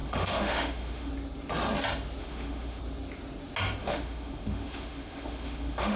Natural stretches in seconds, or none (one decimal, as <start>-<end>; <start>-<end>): 1.1-2.2; 2.8-3.8